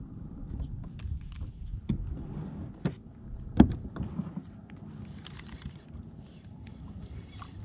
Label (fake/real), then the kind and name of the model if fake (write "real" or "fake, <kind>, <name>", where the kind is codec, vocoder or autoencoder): real